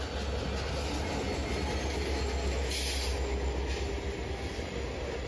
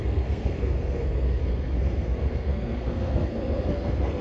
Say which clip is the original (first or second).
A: first